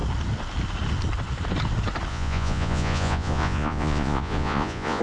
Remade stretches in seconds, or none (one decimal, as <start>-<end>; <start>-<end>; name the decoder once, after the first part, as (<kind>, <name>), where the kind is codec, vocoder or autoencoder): 2.1-5.0 (vocoder, Vocos)